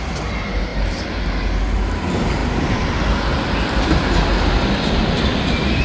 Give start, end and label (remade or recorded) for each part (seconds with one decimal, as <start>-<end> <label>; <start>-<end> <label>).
0.0-5.8 recorded

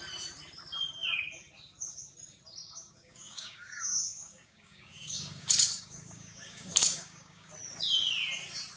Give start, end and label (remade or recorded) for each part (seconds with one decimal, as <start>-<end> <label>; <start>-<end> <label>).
0.0-2.6 recorded; 2.6-7.5 remade; 7.5-8.8 recorded

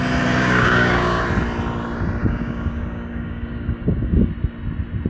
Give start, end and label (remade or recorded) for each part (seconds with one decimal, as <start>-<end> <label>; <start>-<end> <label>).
0.0-0.4 recorded; 0.4-1.2 remade; 1.2-2.2 recorded; 2.2-4.3 remade; 4.3-5.1 recorded

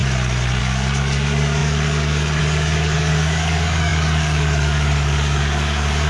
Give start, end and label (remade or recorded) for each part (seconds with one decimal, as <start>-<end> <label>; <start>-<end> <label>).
0.0-0.6 recorded; 0.6-6.1 remade

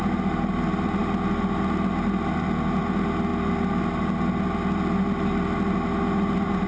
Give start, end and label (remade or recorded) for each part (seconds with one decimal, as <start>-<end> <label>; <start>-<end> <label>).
0.0-6.7 recorded

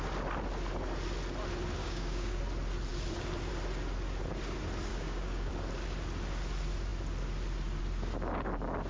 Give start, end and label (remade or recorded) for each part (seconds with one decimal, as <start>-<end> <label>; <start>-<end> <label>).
0.0-1.8 recorded; 1.8-2.4 remade; 2.4-4.9 recorded; 4.9-5.5 remade; 5.5-8.9 recorded